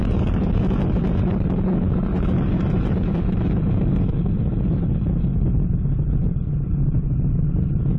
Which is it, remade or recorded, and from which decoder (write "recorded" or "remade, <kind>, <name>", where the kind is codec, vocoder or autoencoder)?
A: recorded